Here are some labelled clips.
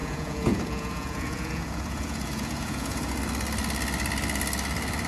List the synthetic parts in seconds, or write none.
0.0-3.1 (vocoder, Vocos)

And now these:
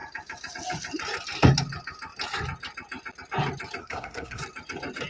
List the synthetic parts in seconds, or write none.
3.8-4.4 (codec, SNAC)

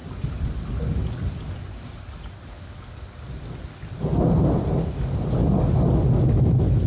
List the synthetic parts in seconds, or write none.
none

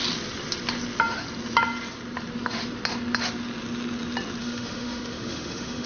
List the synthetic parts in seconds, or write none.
4.4-5.9 (autoencoder, DAC-VAE)

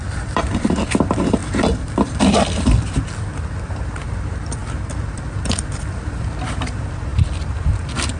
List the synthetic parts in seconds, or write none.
0.0-8.2 (vocoder, BigVGAN v2)

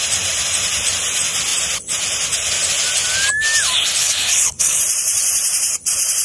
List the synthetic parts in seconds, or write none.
4.0-4.8 (codec, HILCodec)